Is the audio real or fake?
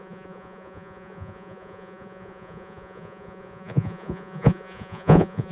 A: fake